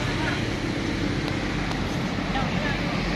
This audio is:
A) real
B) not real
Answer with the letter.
A